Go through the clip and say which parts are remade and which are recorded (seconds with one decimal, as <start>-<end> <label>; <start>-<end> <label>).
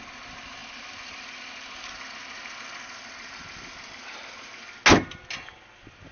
0.0-0.6 recorded; 0.6-1.4 remade; 1.4-6.1 recorded